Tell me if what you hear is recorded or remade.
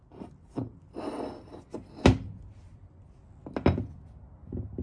recorded